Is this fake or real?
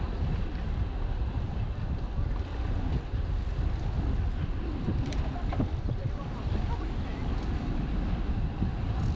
real